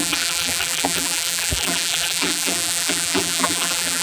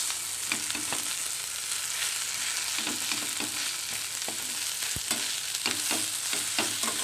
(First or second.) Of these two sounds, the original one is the second